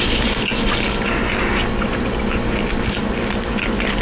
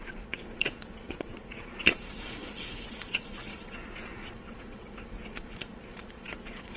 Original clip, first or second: first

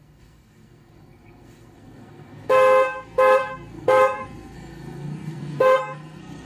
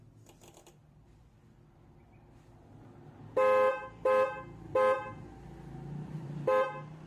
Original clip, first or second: second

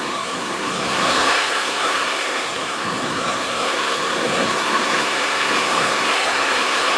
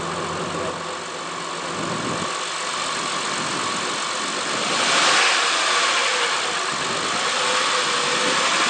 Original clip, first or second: second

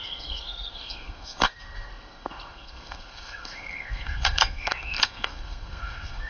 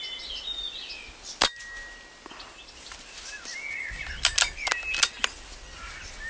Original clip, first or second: second